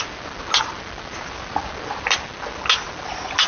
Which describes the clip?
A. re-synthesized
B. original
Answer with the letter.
B